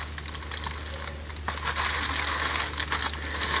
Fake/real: real